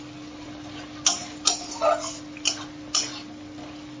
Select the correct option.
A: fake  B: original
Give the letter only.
B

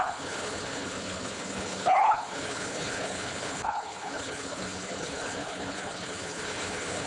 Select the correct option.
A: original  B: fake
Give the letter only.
B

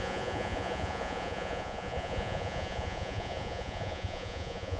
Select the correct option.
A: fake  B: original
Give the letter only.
A